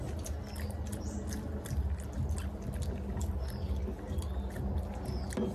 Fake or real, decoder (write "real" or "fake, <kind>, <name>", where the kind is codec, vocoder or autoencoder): real